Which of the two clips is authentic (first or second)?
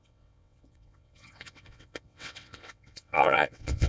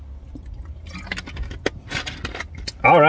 second